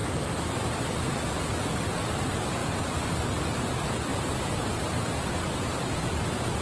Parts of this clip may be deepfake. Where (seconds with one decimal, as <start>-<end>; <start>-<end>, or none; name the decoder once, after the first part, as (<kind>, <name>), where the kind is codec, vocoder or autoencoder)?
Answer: 4.1-5.1 (vocoder, BigVGAN v2)